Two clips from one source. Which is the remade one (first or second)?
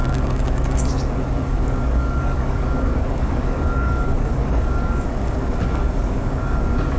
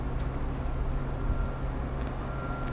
first